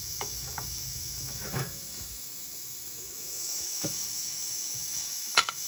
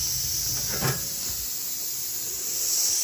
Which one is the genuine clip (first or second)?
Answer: second